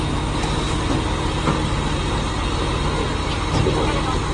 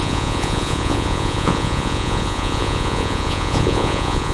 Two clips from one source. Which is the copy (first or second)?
second